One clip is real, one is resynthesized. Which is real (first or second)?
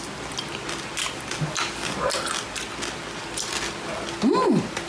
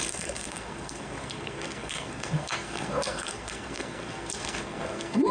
first